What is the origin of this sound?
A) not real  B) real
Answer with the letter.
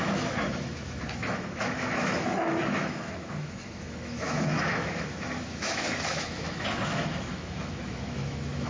A